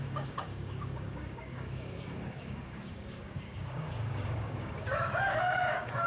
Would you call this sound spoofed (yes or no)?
yes